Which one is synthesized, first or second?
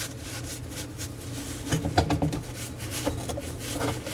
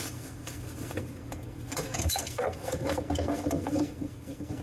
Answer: second